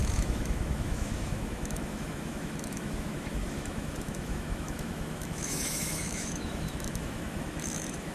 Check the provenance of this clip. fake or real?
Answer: fake